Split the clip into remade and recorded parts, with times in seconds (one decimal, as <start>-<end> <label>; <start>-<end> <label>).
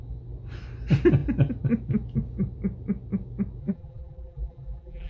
0.0-3.6 recorded; 3.6-5.1 remade